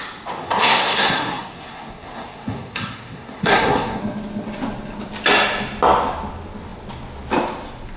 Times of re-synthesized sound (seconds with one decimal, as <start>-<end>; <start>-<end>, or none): 0.4-4.0